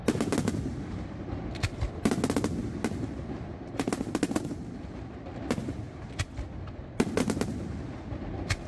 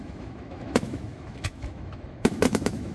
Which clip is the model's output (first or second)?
second